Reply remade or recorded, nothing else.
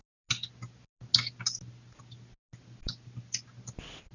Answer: recorded